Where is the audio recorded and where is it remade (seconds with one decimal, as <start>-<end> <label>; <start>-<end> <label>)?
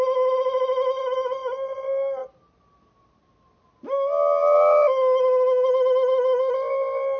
0.0-7.2 recorded